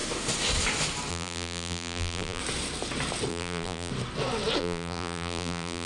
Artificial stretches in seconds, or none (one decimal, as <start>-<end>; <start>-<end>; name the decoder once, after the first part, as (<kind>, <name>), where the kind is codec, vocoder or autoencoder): 1.1-2.4 (vocoder, BigVGAN v2); 3.3-3.9; 4.6-5.9